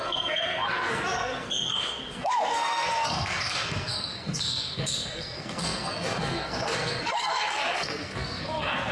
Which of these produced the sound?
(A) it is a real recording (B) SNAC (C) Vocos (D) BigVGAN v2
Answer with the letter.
B